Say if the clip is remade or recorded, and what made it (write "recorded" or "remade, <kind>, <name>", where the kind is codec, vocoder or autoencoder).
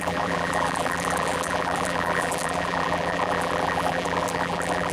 remade, vocoder, BigVGAN v2